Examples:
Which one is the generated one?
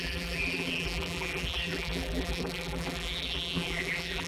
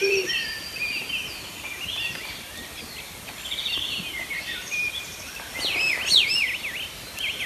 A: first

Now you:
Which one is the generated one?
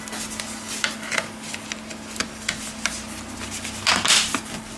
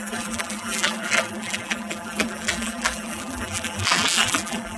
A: second